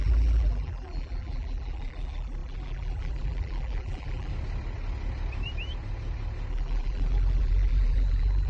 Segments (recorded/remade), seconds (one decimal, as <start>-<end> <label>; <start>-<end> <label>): 0.0-4.3 remade; 4.3-6.5 recorded; 6.5-8.5 remade